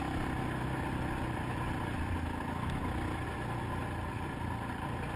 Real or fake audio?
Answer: real